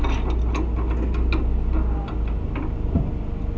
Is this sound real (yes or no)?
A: yes